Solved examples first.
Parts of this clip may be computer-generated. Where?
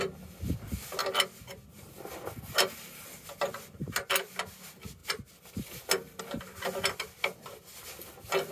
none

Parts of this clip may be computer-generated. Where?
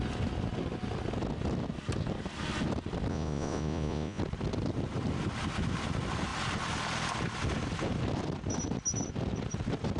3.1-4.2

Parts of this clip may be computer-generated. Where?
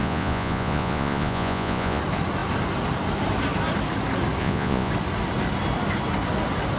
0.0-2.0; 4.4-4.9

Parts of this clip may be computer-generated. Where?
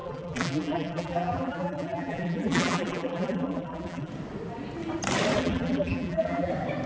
0.0-4.1; 5.4-6.5